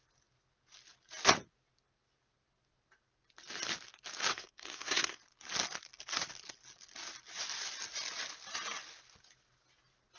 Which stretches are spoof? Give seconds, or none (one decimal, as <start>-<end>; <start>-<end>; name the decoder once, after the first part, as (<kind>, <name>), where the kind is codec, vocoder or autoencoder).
4.3-5.2 (codec, SNAC)